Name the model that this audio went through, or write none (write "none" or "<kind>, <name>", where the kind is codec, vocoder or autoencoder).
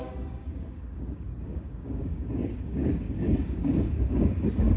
codec, DAC